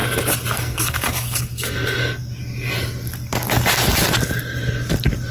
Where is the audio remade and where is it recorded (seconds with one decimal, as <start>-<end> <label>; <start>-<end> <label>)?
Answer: 0.0-0.5 recorded; 0.5-2.0 remade; 2.0-5.3 recorded